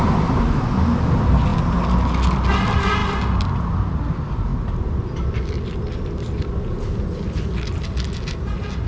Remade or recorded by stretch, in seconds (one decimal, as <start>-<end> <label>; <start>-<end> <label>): 0.0-8.9 recorded